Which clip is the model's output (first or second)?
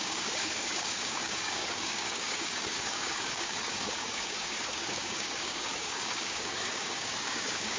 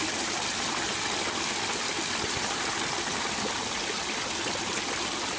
first